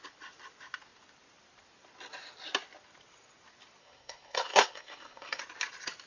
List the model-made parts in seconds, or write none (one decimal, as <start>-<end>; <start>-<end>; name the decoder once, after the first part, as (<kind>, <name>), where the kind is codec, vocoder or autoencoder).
3.8-5.4 (codec, SNAC)